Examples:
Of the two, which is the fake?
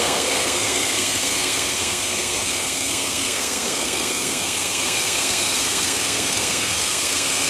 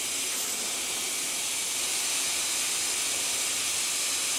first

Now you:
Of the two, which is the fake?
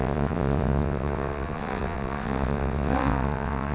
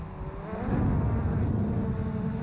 first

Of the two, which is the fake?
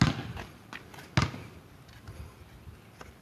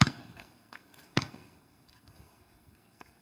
second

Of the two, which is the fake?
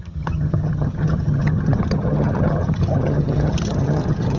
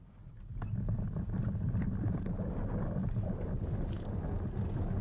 first